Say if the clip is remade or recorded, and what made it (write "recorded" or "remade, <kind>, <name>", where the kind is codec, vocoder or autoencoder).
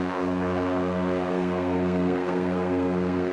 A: remade, codec, SNAC